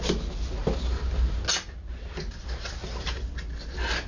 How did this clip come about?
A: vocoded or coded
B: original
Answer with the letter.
B